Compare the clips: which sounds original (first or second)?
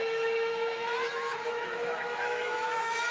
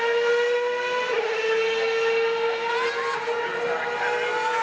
second